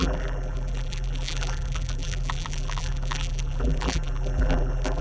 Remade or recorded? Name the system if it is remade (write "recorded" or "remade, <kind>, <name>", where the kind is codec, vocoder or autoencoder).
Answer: remade, vocoder, BigVGAN v2